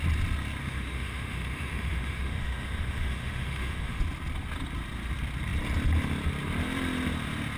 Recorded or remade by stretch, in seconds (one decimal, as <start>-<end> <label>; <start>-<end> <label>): 0.0-0.6 recorded; 0.6-4.0 remade; 4.0-7.6 recorded